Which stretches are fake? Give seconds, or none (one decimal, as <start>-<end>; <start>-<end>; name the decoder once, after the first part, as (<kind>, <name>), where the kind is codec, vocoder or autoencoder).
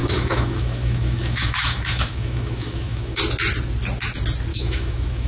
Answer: 0.0-3.2 (autoencoder, DAC-VAE); 4.5-5.3